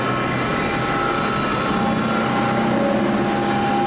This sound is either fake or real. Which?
real